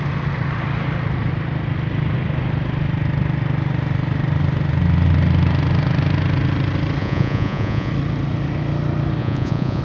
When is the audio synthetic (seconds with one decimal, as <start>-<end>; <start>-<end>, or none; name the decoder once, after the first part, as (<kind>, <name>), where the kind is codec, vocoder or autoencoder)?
7.0-7.9 (vocoder, Vocos); 9.2-9.8